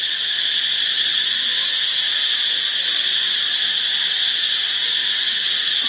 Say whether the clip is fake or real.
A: real